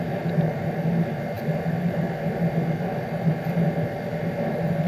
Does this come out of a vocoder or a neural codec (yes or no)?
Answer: no